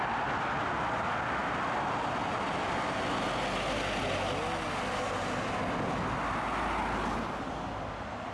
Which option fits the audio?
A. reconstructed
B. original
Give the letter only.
B